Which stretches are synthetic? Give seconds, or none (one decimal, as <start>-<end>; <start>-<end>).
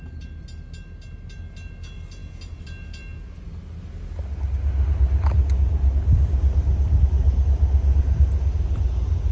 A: none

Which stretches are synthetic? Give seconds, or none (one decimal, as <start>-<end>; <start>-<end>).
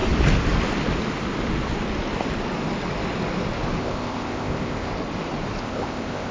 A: 3.8-4.9; 5.6-6.3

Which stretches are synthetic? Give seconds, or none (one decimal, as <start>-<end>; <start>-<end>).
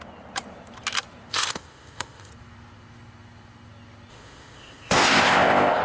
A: 1.3-2.3; 4.1-5.8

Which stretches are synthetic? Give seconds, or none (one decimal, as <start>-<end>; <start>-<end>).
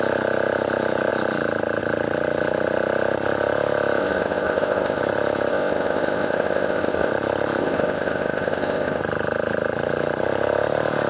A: 4.0-5.0; 5.5-7.1; 7.6-9.0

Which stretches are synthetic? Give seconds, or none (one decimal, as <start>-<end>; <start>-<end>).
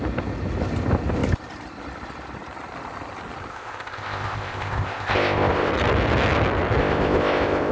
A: 3.5-5.7; 6.8-7.7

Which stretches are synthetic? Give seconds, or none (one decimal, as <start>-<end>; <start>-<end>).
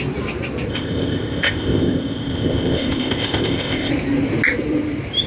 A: 0.7-3.9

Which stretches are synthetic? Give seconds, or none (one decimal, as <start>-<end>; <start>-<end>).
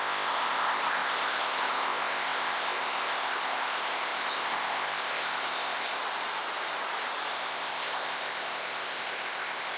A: 0.0-6.0; 7.3-9.8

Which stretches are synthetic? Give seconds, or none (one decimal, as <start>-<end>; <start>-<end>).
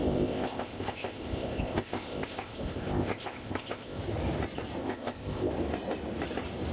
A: 0.0-4.0; 4.8-5.5